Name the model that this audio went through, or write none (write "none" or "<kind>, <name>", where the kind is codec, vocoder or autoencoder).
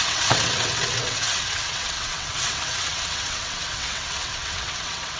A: vocoder, WaveNeXt